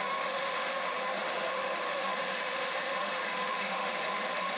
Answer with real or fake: fake